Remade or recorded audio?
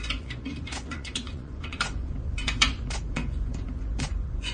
remade